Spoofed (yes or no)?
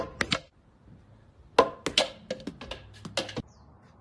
no